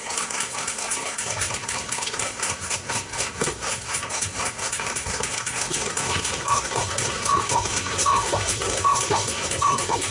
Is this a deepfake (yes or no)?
yes